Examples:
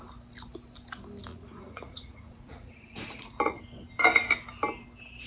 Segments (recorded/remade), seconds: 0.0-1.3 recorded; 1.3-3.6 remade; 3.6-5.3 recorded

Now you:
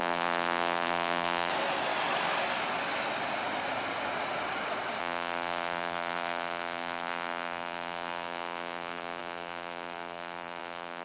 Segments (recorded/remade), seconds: 0.0-1.5 remade; 1.5-5.0 recorded; 5.0-11.0 remade

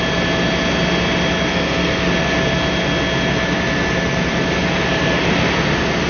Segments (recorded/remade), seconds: 0.0-1.5 recorded; 1.5-2.1 remade; 2.1-6.1 recorded

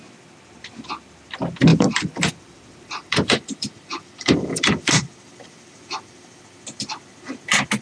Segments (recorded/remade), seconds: 0.0-1.7 recorded; 1.7-6.4 remade; 6.4-7.8 recorded